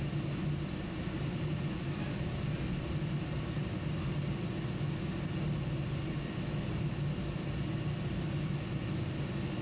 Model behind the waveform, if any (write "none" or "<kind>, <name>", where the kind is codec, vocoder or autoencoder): none